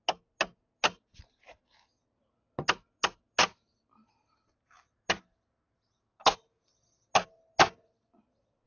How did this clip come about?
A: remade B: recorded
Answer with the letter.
B